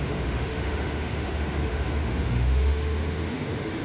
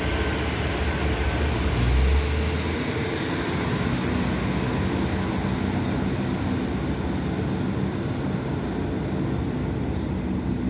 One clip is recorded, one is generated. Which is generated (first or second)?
first